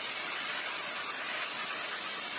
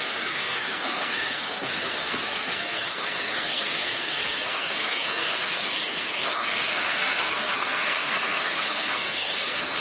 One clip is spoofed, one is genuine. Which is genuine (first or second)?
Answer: first